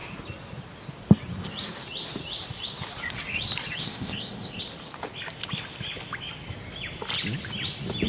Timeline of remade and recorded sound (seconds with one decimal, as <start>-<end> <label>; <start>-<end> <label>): 0.0-3.8 recorded; 3.8-4.6 remade; 4.6-8.1 recorded